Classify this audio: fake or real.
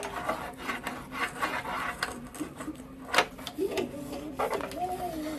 real